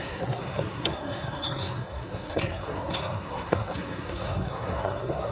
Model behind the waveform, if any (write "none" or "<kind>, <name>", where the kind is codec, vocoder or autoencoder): codec, SNAC